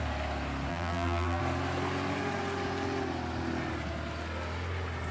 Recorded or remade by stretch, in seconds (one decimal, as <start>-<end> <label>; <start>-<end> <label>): 0.0-0.7 recorded; 0.7-1.4 remade; 1.4-5.1 recorded